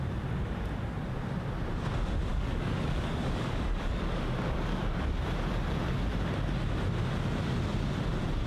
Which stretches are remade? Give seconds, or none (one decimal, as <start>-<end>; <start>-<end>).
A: 2.3-5.2